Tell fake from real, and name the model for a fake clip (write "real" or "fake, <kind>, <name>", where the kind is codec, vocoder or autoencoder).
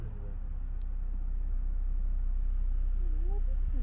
real